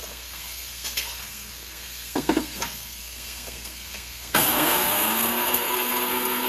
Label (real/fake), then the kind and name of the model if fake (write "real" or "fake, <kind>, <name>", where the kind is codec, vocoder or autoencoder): fake, codec, SNAC